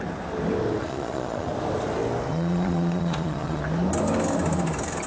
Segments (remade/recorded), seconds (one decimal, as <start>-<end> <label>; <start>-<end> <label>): 0.0-0.8 recorded; 0.8-1.5 remade; 1.5-2.3 recorded; 2.3-3.6 remade; 3.6-5.1 recorded